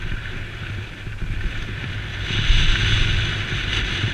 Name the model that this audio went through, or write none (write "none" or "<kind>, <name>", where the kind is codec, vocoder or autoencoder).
none